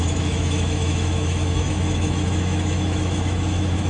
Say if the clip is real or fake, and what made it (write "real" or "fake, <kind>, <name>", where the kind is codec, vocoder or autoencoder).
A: fake, autoencoder, DAC-VAE